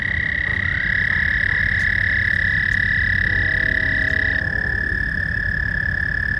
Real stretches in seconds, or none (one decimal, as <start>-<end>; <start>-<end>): 0.0-6.4